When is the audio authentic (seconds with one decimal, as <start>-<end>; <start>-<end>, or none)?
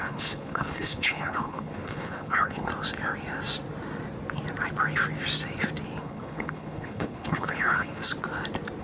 2.7-6.0; 8.0-8.8